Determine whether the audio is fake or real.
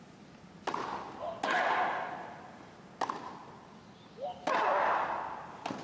real